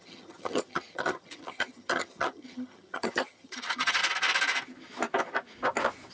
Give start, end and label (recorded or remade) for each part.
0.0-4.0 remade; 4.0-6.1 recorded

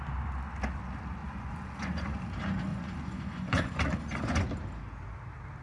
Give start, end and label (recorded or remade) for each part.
0.0-1.2 recorded; 1.2-2.2 remade; 2.2-2.7 recorded; 2.7-4.5 remade; 4.5-5.6 recorded

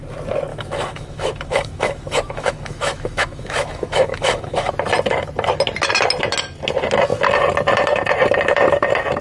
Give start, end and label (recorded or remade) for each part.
0.0-0.5 recorded; 0.5-4.7 remade; 4.7-9.2 recorded

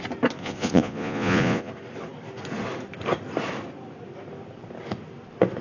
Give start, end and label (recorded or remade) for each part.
0.0-0.4 recorded; 0.4-1.7 remade; 1.7-5.6 recorded

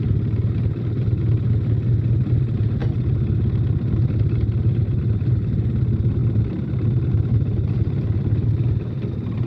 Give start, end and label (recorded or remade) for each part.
0.0-2.8 recorded; 2.8-4.2 remade; 4.2-6.2 recorded; 6.2-7.1 remade; 7.1-9.5 recorded

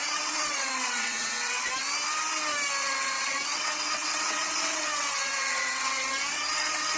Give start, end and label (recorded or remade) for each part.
0.0-1.7 remade; 1.7-2.8 recorded; 2.8-7.0 remade

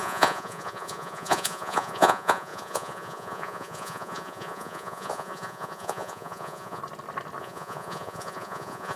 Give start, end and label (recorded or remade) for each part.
0.0-6.8 remade; 6.8-7.4 recorded; 7.4-9.0 remade

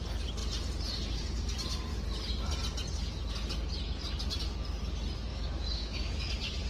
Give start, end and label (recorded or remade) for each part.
0.0-5.3 recorded; 5.3-6.3 remade; 6.3-6.7 recorded